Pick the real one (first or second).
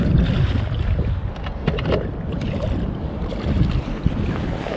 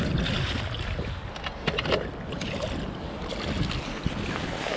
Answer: second